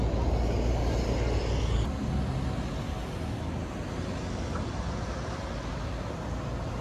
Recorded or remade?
recorded